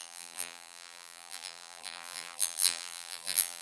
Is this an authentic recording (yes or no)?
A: no